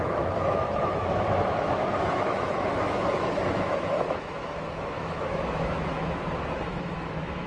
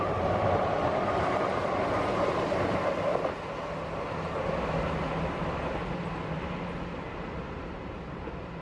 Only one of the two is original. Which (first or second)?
second